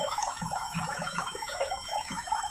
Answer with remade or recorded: remade